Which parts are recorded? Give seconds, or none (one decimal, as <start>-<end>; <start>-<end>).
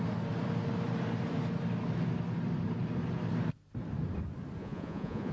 0.0-4.6